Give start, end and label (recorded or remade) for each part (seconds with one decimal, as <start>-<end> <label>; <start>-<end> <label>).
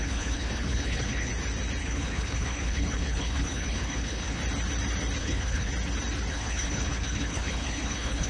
0.0-1.3 remade; 1.3-1.8 recorded; 1.8-4.4 remade; 4.4-5.2 recorded; 5.2-5.7 remade; 5.7-6.3 recorded; 6.3-8.3 remade